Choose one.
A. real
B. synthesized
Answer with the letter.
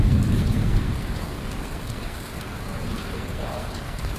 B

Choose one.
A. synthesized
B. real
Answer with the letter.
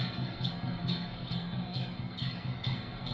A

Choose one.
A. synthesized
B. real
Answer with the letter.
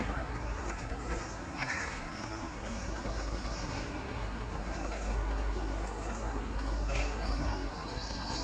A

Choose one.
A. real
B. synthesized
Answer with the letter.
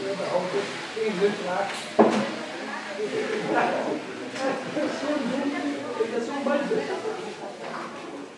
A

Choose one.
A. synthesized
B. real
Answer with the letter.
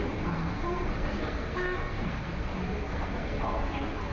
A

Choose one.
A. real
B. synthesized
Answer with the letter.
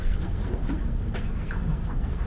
B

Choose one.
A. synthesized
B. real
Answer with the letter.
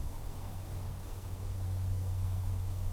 A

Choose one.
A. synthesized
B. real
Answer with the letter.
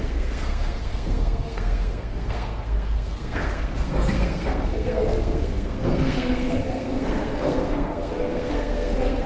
A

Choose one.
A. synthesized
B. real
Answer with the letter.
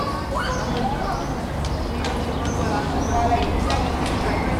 B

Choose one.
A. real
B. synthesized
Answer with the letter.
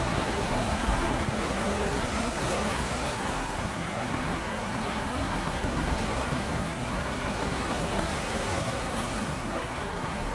B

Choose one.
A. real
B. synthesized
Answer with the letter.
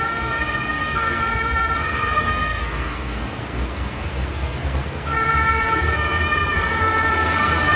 B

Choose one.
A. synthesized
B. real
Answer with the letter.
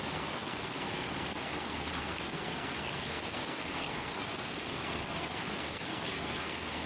A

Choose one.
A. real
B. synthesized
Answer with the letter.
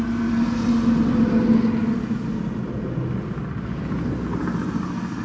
A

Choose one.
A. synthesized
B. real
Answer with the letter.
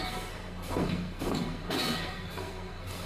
A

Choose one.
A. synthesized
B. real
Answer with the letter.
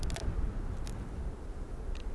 B